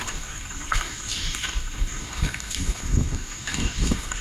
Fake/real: fake